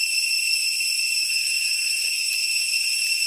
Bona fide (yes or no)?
no